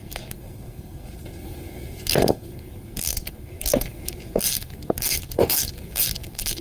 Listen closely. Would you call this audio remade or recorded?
remade